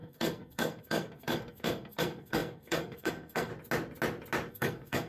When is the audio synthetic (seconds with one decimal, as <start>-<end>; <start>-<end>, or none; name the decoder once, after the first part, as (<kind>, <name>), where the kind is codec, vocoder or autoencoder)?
0.0-3.5 (codec, SNAC); 4.5-5.1